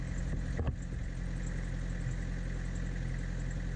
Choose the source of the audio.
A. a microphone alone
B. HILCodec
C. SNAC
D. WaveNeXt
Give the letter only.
A